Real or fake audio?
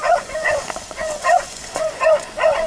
fake